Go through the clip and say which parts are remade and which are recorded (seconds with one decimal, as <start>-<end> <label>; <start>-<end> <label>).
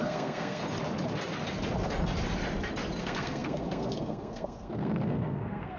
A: 0.0-0.6 remade; 0.6-3.0 recorded; 3.0-5.8 remade